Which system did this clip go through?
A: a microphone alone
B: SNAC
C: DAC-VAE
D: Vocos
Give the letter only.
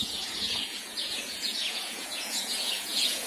D